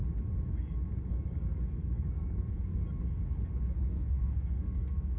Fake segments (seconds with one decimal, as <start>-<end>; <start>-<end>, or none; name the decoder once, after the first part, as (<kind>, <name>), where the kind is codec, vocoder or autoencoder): 1.8-2.8 (codec, SNAC); 3.9-5.2